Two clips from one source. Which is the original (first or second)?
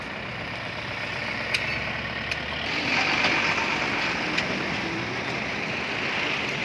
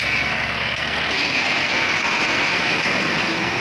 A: first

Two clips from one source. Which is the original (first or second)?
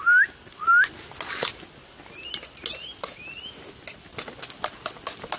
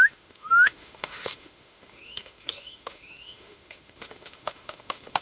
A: first